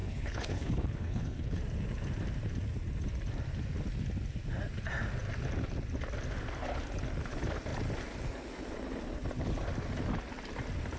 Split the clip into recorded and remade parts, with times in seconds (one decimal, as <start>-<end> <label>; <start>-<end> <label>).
0.0-1.6 remade; 1.6-11.0 recorded